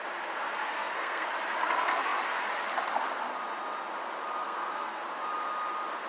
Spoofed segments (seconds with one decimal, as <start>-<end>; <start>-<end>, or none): 0.6-1.3; 4.4-5.0